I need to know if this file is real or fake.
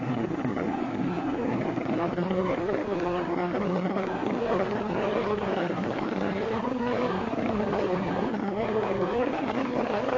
fake